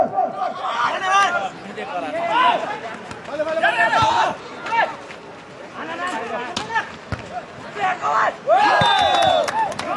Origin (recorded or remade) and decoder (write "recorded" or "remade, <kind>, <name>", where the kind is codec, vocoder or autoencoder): recorded